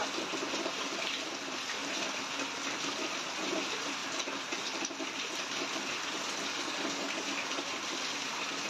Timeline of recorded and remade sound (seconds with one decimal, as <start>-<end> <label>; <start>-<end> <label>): 0.0-6.5 recorded; 6.5-7.6 remade; 7.6-8.7 recorded